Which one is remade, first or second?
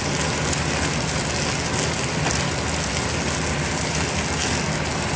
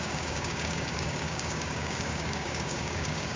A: second